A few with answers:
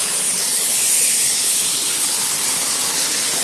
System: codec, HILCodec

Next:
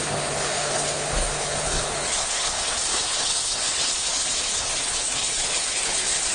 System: codec, HILCodec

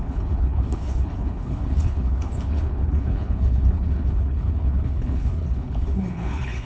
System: codec, HILCodec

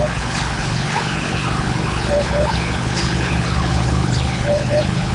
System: codec, HILCodec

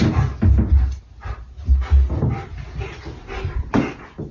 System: none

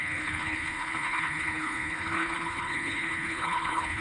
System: codec, HILCodec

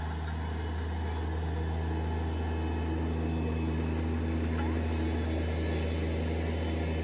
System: none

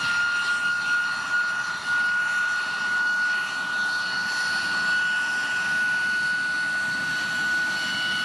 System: none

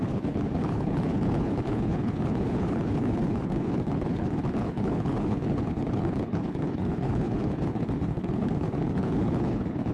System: codec, HILCodec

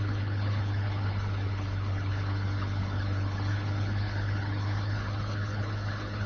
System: codec, HILCodec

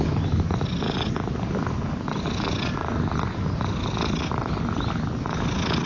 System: none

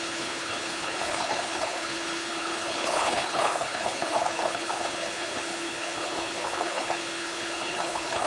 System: codec, HILCodec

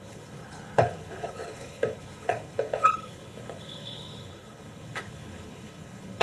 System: codec, HILCodec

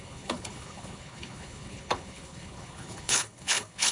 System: codec, HILCodec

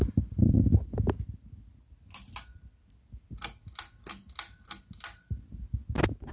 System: none